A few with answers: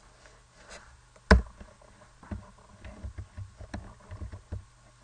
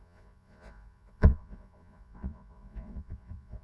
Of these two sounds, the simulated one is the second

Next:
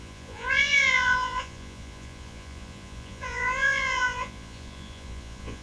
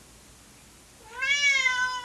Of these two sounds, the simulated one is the first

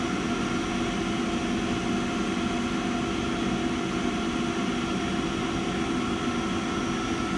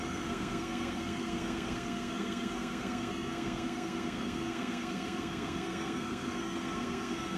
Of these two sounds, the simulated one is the second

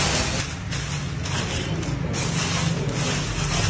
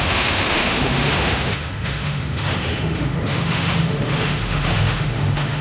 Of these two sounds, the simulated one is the second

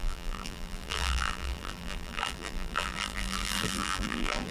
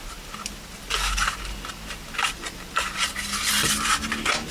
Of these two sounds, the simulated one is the first